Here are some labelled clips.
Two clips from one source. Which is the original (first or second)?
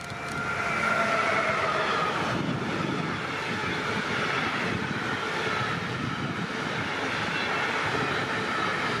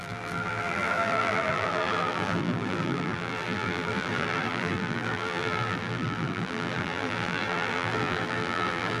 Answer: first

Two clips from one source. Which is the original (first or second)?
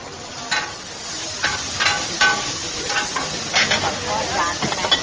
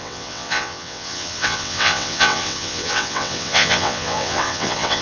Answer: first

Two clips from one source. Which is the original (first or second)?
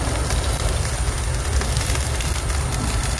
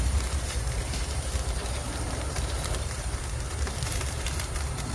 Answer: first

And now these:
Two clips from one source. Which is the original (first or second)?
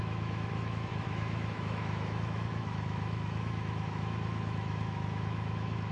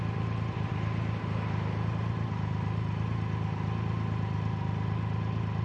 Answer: second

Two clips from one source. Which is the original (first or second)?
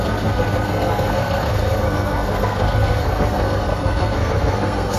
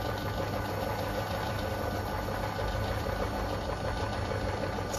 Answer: second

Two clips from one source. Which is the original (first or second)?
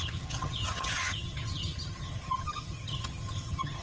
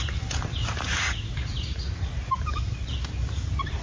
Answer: second